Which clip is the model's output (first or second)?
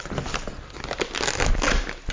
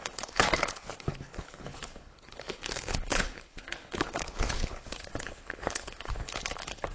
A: second